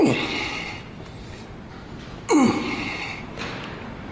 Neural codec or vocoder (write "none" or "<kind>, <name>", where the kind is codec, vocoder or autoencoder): none